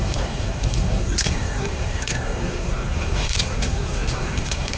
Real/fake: fake